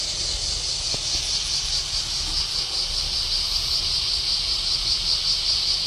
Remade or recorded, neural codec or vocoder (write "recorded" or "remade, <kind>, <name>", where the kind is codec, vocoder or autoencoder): recorded